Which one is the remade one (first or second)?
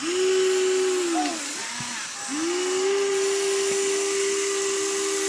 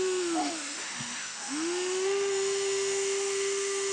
second